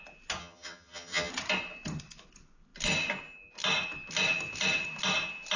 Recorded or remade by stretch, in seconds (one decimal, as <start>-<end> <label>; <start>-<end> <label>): 0.0-0.4 recorded; 0.4-1.3 remade; 1.3-5.6 recorded

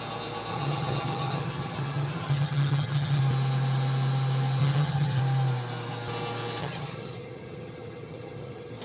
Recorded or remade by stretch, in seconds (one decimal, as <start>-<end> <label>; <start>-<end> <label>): 0.0-0.5 recorded; 0.5-3.2 remade; 3.2-4.6 recorded; 4.6-5.2 remade; 5.2-6.6 recorded; 6.6-8.8 remade

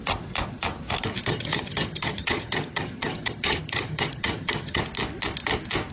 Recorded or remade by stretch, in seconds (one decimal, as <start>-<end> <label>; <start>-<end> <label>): 0.0-1.3 recorded; 1.3-4.8 remade; 4.8-5.9 recorded

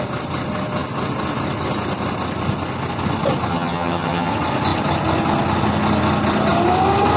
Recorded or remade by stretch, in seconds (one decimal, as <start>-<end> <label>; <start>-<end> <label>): 0.0-3.5 recorded; 3.5-4.3 remade; 4.3-7.2 recorded

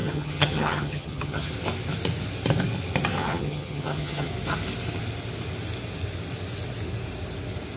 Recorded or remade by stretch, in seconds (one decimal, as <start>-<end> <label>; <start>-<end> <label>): 0.0-1.5 remade; 1.5-3.2 recorded; 3.2-4.3 remade; 4.3-7.8 recorded

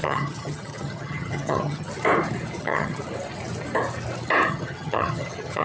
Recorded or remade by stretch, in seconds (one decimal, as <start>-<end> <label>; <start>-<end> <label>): 0.0-1.9 remade; 1.9-2.6 recorded; 2.6-3.0 remade; 3.0-4.5 recorded; 4.5-5.6 remade

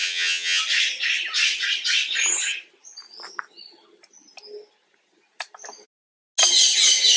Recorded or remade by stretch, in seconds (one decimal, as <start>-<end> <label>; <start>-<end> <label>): 0.0-0.6 remade; 0.6-7.2 recorded

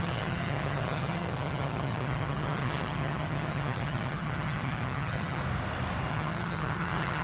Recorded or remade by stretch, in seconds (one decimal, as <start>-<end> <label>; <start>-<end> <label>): 0.0-5.4 remade; 5.4-6.1 recorded; 6.1-7.2 remade